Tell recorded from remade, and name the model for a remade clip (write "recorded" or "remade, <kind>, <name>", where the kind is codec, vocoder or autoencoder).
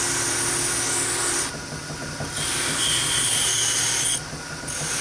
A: recorded